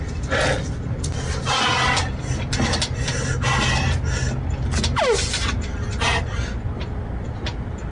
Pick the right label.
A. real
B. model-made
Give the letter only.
A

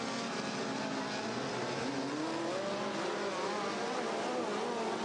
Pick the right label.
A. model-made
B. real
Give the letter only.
B